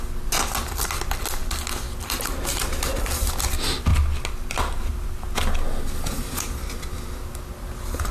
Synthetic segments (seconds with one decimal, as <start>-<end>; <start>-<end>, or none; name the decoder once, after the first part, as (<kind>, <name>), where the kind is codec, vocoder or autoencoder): none